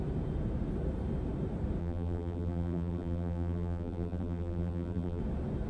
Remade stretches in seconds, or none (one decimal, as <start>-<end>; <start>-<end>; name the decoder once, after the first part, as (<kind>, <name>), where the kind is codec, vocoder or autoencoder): 1.8-5.2 (vocoder, BigVGAN v2)